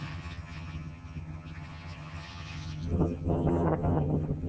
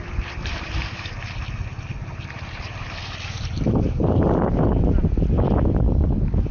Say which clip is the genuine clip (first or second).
second